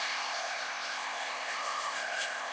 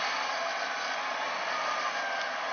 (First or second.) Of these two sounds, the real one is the second